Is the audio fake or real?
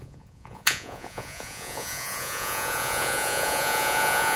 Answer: fake